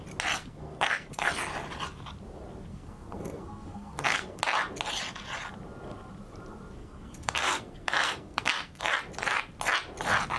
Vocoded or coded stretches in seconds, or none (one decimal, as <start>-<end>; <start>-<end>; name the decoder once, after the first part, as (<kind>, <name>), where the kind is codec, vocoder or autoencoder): 0.4-1.3 (codec, SNAC); 2.7-4.4; 6.8-8.8